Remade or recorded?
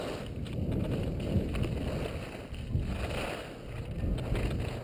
recorded